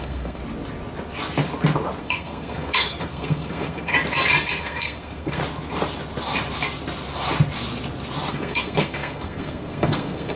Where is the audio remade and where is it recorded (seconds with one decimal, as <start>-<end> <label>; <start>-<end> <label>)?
0.0-0.4 remade; 0.4-2.0 recorded; 2.0-3.9 remade; 3.9-4.5 recorded; 4.5-5.4 remade; 5.4-8.3 recorded; 8.3-10.4 remade